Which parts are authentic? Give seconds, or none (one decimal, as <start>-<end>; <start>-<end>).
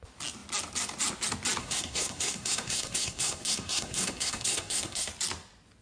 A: 0.0-1.6; 5.1-5.8